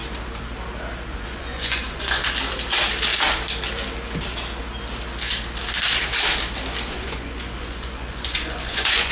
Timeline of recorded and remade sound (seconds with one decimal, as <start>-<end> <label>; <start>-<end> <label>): 0.0-1.1 recorded; 1.1-2.2 remade; 2.2-6.9 recorded; 6.9-9.1 remade